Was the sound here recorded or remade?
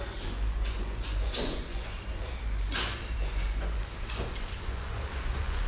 remade